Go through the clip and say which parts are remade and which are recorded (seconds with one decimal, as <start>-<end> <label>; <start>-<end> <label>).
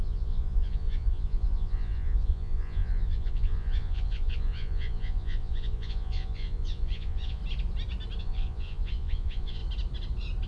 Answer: 0.0-7.4 remade; 7.4-8.2 recorded; 8.2-9.6 remade; 9.6-10.5 recorded